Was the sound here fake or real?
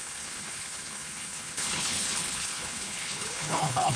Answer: fake